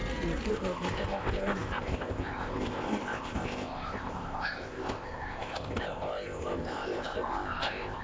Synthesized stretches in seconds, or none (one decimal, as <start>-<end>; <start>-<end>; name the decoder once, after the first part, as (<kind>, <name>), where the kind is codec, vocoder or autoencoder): 0.5-8.0 (codec, ZipCodec)